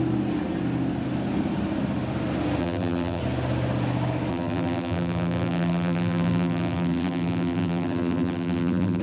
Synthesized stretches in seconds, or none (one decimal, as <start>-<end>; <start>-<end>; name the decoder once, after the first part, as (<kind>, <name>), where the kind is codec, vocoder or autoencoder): 2.6-3.2 (vocoder, BigVGAN v2); 4.3-9.0